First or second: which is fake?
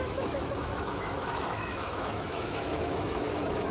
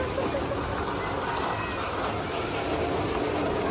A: first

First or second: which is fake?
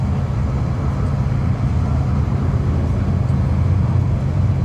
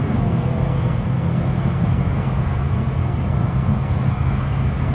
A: second